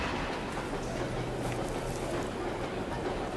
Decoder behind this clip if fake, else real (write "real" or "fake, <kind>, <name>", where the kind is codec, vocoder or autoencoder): real